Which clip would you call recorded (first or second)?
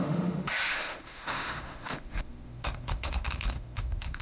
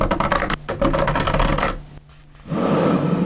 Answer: second